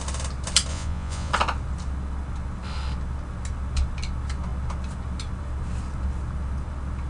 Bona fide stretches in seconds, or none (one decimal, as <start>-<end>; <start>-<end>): 0.0-0.7; 1.3-7.1